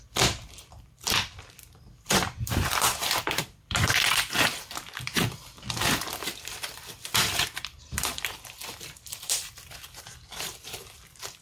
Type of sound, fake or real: fake